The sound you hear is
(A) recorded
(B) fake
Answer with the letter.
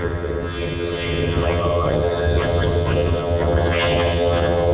B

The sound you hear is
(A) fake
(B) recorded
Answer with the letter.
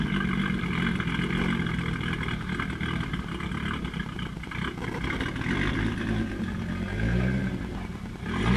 B